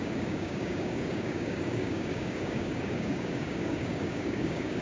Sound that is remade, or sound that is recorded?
remade